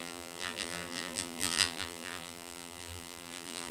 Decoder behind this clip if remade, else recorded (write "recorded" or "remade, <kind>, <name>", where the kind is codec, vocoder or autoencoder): remade, vocoder, BigVGAN v2